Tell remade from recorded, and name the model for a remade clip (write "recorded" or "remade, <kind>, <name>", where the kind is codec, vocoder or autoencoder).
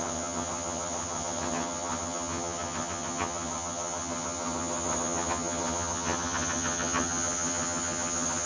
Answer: remade, vocoder, HiFi-GAN